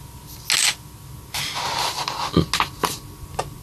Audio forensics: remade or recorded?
recorded